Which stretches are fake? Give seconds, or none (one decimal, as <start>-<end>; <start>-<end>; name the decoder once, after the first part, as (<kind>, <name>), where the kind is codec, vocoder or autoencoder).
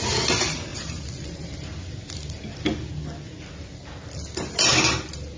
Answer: none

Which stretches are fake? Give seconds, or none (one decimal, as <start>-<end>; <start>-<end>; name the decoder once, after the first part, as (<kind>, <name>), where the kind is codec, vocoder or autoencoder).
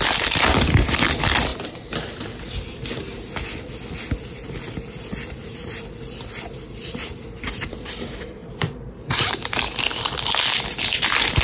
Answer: 1.5-2.5 (vocoder, BigVGAN v2); 8.4-9.3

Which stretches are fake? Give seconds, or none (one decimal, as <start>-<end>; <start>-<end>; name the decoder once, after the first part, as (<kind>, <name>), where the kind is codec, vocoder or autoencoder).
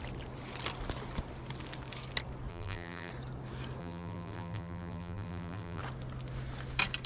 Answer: 2.5-3.1 (vocoder, BigVGAN v2); 3.8-5.8